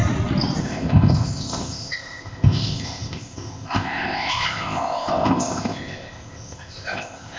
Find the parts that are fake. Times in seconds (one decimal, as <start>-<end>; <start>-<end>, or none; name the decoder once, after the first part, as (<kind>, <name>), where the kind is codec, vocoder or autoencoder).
0.6-7.4 (codec, ZipCodec)